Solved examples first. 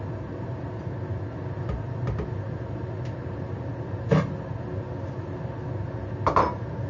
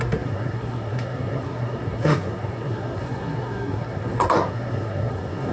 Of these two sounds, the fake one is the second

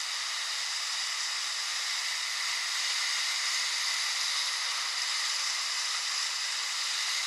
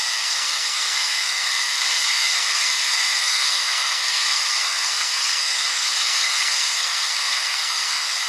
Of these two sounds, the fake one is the second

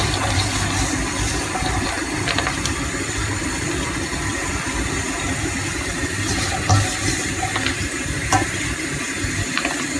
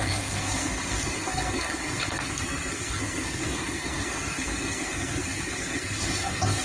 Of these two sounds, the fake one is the second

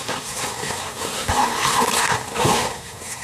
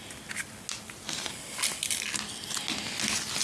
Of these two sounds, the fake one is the first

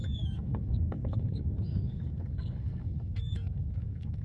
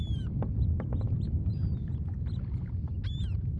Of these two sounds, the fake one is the first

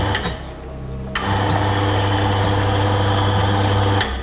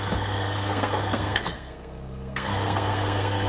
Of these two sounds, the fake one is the second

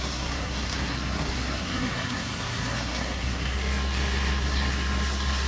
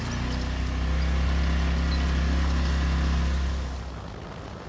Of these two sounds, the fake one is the first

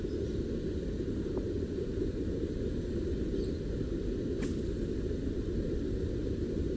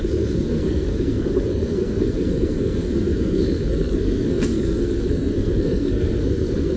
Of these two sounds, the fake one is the second